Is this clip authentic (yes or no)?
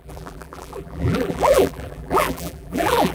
no